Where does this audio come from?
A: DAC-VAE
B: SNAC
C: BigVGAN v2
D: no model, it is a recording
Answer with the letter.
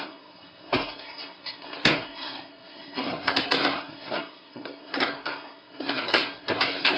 B